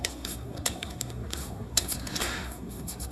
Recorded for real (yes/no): no